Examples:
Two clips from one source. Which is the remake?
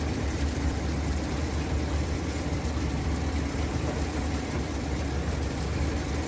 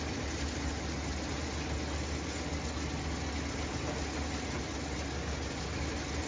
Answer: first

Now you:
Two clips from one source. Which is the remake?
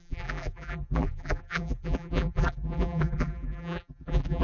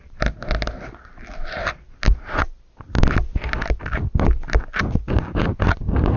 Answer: first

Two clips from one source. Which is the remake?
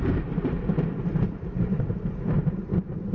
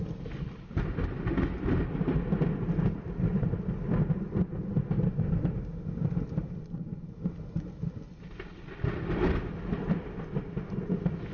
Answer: first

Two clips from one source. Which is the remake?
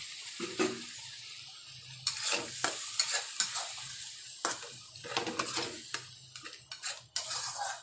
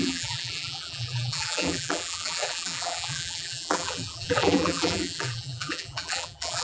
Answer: second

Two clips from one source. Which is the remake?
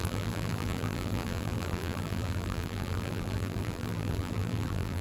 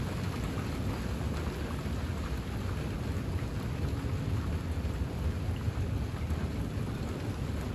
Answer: first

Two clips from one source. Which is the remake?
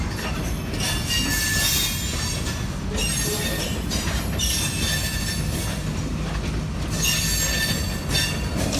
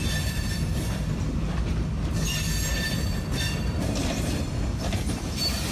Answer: second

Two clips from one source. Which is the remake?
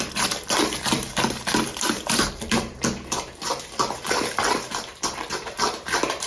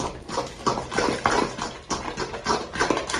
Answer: first